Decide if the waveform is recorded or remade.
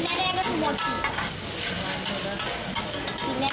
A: recorded